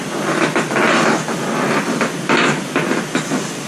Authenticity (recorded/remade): recorded